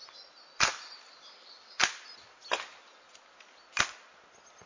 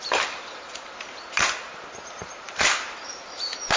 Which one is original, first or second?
first